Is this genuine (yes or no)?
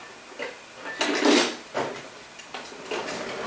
yes